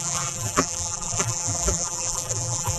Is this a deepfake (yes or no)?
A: yes